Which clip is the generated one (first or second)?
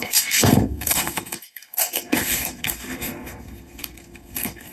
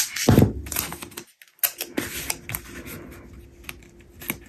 first